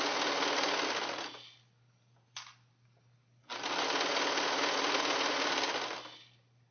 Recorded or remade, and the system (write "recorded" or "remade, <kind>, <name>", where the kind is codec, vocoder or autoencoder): recorded